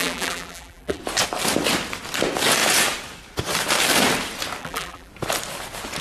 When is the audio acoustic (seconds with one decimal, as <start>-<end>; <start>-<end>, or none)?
1.0-4.6; 5.1-6.0